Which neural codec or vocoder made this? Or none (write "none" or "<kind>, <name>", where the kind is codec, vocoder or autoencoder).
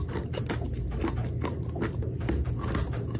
none